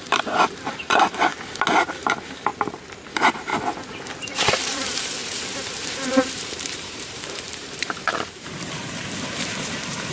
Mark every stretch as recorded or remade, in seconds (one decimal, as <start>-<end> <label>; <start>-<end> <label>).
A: 0.0-1.3 remade; 1.3-1.9 recorded; 1.9-2.5 remade; 2.5-3.1 recorded; 3.1-3.5 remade; 3.5-4.5 recorded; 4.5-10.1 remade

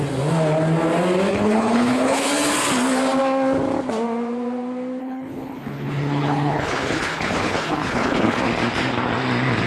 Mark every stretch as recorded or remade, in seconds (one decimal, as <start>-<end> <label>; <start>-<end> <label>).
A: 0.0-1.3 recorded; 1.3-2.3 remade; 2.3-5.0 recorded; 5.0-8.4 remade; 8.4-9.7 recorded

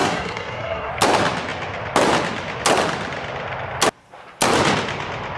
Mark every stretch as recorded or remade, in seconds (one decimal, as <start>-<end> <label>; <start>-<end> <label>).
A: 0.0-0.9 remade; 0.9-5.4 recorded

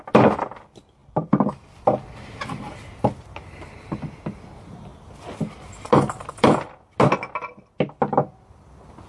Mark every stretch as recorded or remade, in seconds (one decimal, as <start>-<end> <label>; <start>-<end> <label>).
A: 0.0-1.0 recorded; 1.0-2.6 remade; 2.6-9.1 recorded